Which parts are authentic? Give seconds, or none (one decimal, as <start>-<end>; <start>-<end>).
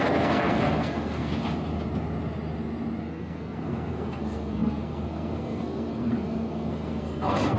1.3-3.0